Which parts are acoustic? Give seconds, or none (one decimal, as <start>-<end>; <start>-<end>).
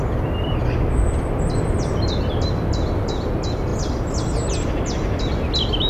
0.0-5.9